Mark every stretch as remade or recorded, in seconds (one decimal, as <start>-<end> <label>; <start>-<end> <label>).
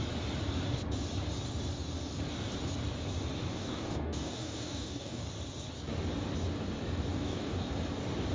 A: 0.0-3.5 recorded; 3.5-5.2 remade; 5.2-7.1 recorded; 7.1-7.7 remade; 7.7-8.3 recorded